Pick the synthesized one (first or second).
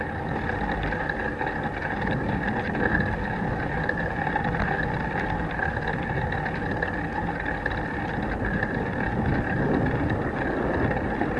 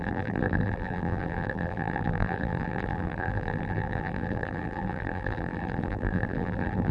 second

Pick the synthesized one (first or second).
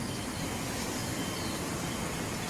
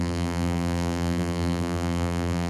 second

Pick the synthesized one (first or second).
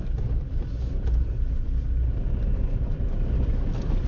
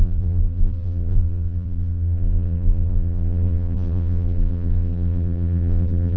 second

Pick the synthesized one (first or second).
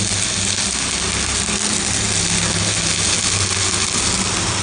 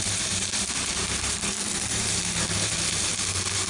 second